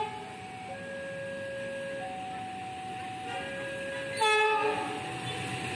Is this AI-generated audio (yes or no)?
no